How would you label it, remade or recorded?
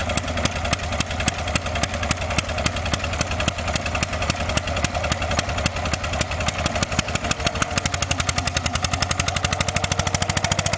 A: recorded